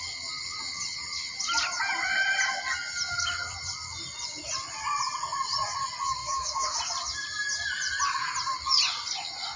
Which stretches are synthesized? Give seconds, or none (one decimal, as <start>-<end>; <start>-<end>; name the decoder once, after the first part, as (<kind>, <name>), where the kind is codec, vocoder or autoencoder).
6.2-6.8 (autoencoder, DAC-VAE)